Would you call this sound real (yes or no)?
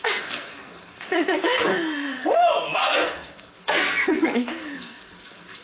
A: no